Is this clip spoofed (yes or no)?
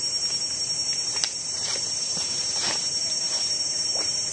no